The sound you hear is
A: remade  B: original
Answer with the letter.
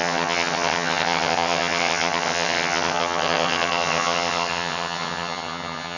A